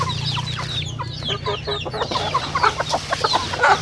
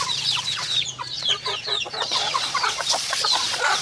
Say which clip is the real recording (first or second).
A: first